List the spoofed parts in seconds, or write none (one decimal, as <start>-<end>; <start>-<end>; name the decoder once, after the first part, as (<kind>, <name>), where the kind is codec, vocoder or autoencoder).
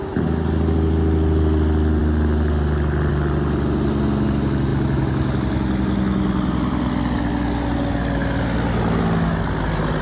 none